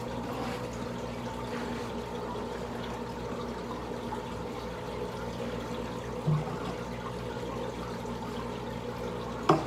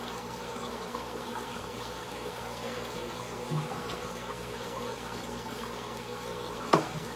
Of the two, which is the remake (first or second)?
second